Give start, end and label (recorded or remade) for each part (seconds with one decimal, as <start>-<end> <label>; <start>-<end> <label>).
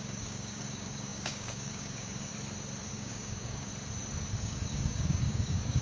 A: 0.0-2.3 remade; 2.3-2.9 recorded; 2.9-3.7 remade; 3.7-4.4 recorded; 4.4-5.8 remade